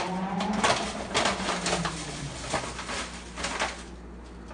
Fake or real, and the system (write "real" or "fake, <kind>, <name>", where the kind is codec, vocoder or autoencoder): real